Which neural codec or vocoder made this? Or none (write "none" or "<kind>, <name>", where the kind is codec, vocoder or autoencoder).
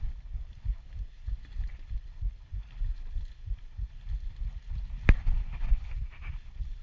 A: none